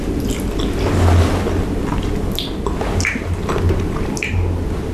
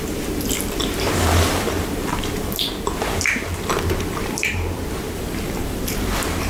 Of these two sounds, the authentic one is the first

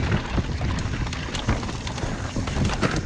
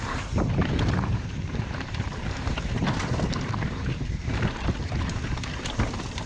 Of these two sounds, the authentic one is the first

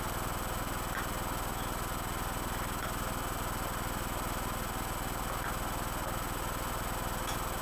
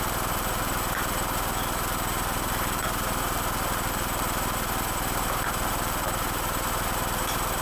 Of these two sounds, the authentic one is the first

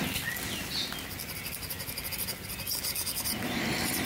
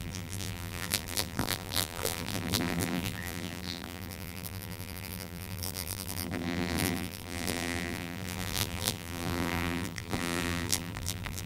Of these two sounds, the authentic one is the first